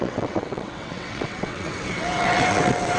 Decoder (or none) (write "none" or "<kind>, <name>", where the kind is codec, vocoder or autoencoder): vocoder, WaveNeXt